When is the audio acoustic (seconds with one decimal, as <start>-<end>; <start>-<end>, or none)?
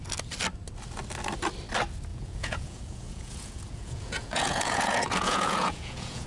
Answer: 0.0-2.1